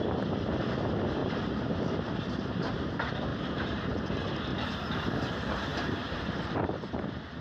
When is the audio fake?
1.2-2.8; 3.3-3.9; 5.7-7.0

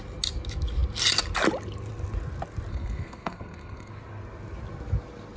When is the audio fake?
2.7-3.9

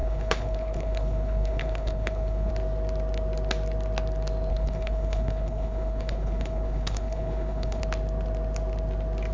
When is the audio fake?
0.0-2.5; 4.5-7.8

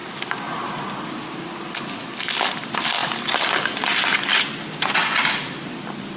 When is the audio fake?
0.0-0.7

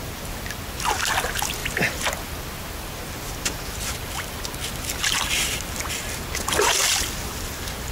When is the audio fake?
none

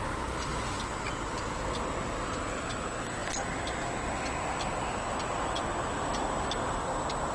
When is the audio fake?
none